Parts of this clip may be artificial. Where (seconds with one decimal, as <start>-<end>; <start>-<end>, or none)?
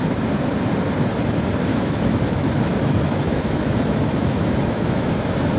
1.7-5.1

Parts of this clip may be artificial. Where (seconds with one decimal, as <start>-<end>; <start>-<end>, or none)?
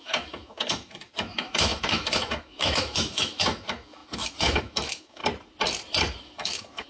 0.0-5.2; 6.2-6.9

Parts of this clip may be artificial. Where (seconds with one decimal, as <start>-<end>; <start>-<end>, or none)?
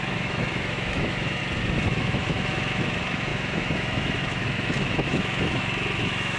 0.0-1.4; 1.9-6.4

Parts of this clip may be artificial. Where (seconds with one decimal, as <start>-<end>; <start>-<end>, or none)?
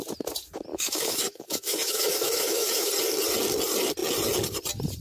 0.7-2.9